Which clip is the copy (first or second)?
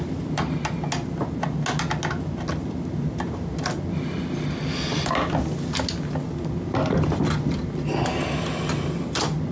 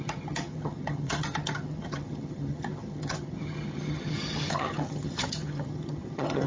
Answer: second